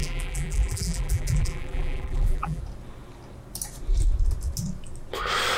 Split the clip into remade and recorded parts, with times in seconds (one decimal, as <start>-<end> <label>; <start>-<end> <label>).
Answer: 0.0-2.6 remade; 2.6-5.6 recorded